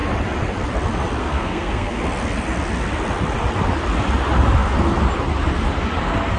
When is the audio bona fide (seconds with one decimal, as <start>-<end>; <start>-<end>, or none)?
0.0-1.2; 2.0-6.4

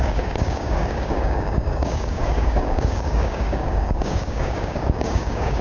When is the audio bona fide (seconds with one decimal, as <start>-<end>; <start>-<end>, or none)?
none

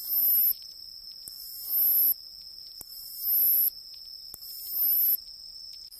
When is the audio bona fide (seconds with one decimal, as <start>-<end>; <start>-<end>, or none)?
0.0-6.0